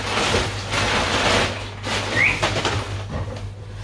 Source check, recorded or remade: recorded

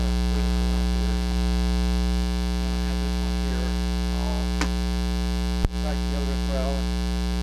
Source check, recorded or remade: recorded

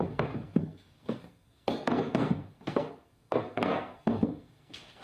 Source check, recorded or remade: remade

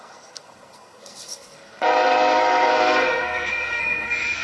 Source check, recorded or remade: remade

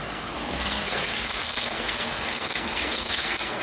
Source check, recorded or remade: remade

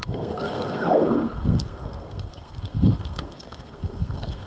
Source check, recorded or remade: remade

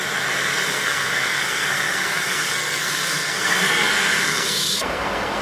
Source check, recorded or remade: remade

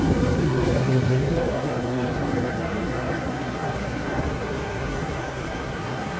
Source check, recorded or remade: remade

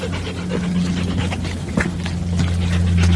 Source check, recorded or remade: recorded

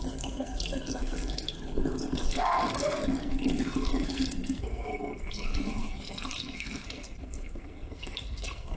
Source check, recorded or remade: remade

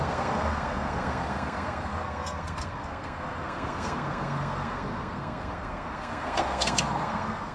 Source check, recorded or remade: remade